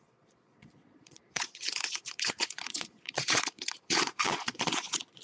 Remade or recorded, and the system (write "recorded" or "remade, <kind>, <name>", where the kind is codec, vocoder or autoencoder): remade, vocoder, Vocos